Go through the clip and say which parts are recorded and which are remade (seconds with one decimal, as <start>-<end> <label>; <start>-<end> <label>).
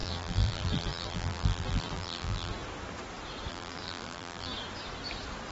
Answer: 0.0-2.5 remade; 2.5-3.5 recorded; 3.5-4.5 remade; 4.5-5.5 recorded